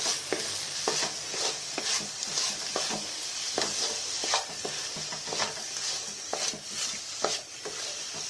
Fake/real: real